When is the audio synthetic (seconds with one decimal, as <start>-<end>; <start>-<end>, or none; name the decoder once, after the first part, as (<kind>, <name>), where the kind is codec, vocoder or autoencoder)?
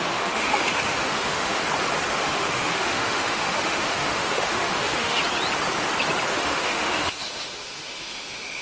0.0-1.6 (autoencoder, DAC-VAE); 2.1-5.2; 6.3-8.6